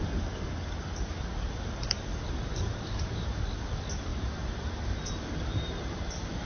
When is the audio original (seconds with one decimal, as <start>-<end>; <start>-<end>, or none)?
0.0-2.5; 3.4-4.1; 5.1-6.4